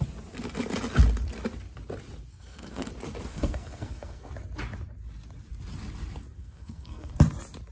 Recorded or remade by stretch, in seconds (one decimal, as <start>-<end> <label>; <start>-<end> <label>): 0.0-2.3 recorded; 2.3-2.9 remade; 2.9-3.3 recorded; 3.3-4.3 remade; 4.3-6.4 recorded; 6.4-7.1 remade; 7.1-7.7 recorded